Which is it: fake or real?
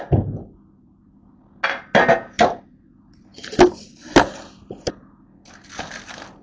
real